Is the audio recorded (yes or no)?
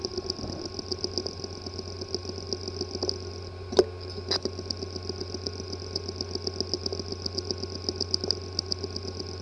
yes